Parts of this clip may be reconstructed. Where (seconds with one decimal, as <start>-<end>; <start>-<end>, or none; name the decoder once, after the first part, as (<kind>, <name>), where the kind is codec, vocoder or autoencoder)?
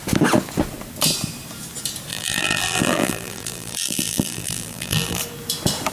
2.1-5.2 (vocoder, BigVGAN v2)